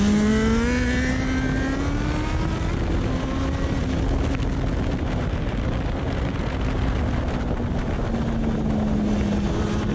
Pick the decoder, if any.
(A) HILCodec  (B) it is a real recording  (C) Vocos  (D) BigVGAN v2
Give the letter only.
B